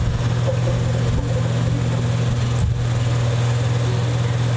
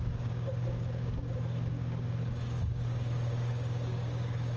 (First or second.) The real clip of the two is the first